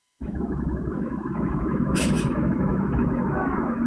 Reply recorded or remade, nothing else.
remade